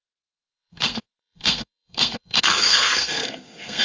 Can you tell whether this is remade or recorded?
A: remade